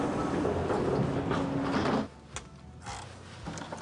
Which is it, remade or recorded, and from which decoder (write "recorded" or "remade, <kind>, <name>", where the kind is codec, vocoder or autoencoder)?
recorded